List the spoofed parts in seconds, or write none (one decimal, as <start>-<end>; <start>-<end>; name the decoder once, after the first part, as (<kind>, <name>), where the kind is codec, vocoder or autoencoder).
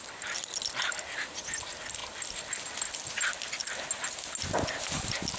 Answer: none